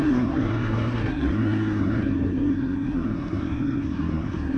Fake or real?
fake